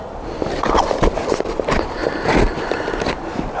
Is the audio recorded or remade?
recorded